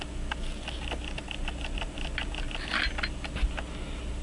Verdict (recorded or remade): recorded